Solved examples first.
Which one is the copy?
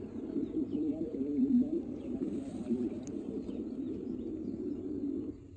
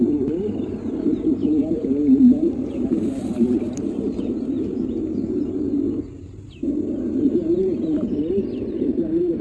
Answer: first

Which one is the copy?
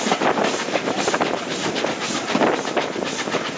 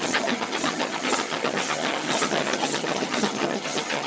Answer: second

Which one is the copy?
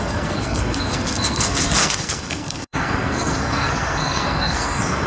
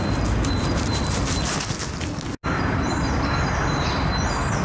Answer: first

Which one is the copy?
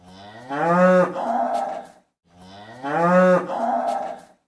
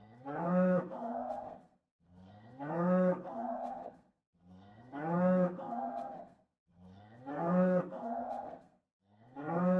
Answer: second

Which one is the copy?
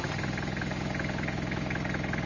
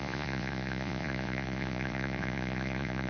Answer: second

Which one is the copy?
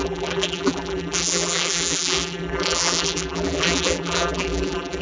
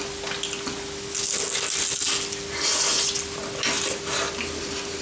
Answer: first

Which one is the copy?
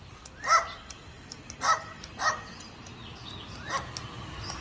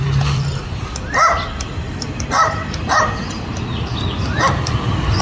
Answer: second